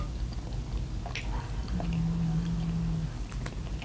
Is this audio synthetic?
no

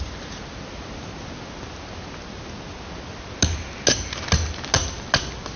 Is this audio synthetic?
no